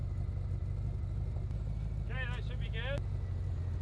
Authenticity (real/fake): real